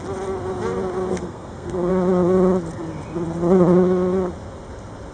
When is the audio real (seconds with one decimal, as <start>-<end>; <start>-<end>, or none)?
0.0-1.1; 1.9-5.1

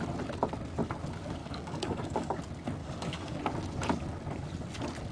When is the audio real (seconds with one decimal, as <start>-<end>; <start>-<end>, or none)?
0.0-1.4; 2.4-2.8; 3.4-5.1